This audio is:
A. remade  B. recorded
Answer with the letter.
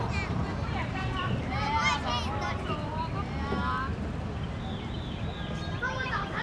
B